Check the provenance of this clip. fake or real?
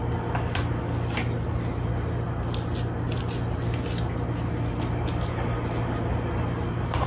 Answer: real